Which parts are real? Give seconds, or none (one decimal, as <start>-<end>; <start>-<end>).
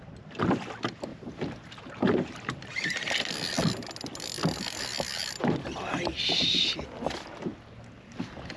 0.0-1.1; 2.7-8.6